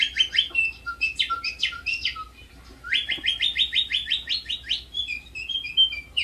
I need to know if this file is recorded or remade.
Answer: recorded